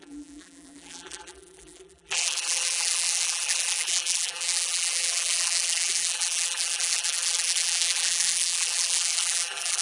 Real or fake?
fake